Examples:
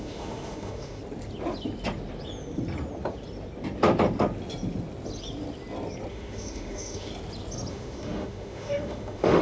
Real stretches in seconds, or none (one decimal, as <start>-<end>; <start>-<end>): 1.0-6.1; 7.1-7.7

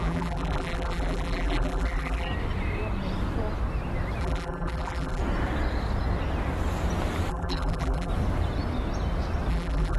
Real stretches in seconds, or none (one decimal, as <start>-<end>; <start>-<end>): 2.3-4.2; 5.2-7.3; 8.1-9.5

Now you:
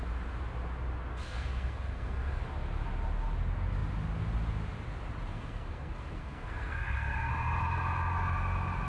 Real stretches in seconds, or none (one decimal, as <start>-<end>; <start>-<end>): 0.0-1.1; 2.4-5.3; 7.3-8.9